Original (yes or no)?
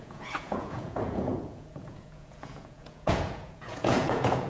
no